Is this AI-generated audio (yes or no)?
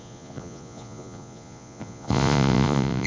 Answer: yes